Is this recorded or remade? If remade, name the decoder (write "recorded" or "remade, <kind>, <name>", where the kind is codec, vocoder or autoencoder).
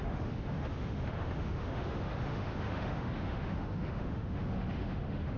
remade, autoencoder, DAC-VAE